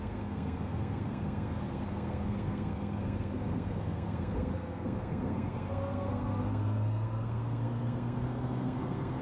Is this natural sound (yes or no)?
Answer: no